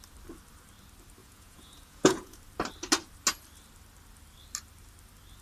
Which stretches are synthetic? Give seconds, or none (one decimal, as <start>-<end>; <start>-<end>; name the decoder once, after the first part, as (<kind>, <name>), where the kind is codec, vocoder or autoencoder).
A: 1.2-2.4 (vocoder, Vocos)